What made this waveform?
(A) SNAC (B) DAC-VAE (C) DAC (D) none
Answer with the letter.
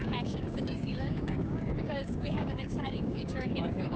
C